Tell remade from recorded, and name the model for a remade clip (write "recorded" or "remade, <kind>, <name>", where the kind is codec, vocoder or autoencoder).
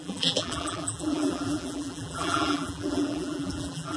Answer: remade, vocoder, BigVGAN v2